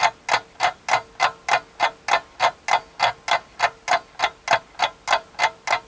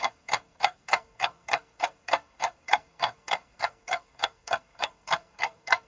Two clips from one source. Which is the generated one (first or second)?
second